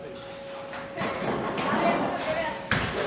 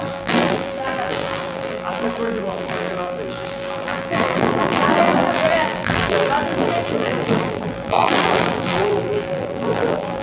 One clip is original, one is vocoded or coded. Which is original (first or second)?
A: first